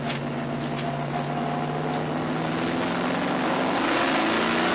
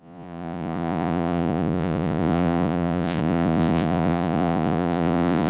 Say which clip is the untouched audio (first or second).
first